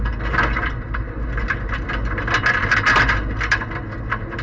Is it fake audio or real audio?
real